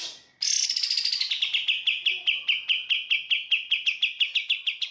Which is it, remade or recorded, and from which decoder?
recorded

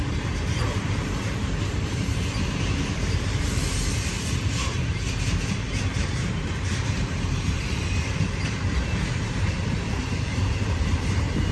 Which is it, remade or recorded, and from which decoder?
remade, vocoder, BigVGAN v2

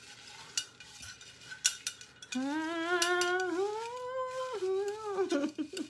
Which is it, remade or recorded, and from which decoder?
recorded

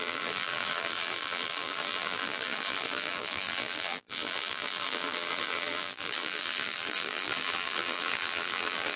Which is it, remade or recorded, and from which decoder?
remade, vocoder, BigVGAN v2